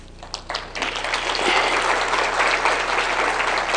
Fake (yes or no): no